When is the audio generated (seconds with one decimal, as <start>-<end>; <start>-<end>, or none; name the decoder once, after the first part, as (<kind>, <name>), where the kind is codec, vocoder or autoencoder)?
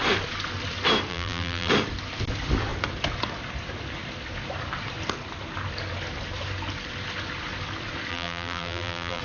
1.1-1.7 (vocoder, BigVGAN v2); 8.1-9.2